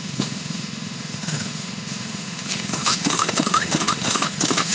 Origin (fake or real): fake